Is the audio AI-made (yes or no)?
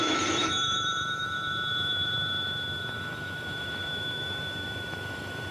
yes